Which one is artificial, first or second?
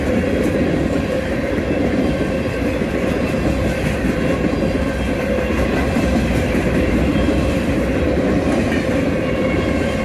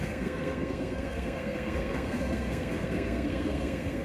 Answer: second